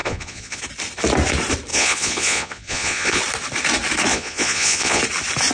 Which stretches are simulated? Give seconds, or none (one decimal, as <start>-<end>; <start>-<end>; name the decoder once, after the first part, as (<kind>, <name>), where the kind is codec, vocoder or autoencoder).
0.0-0.6 (vocoder, Vocos); 1.7-3.2; 4.1-5.0